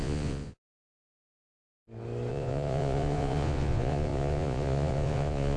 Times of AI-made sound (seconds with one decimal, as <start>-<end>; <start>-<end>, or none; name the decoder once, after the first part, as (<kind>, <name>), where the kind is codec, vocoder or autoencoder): 0.0-1.3 (vocoder, Vocos); 2.3-5.6